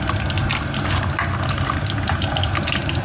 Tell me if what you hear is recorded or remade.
recorded